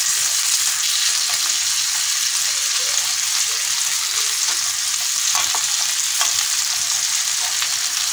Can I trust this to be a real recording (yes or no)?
yes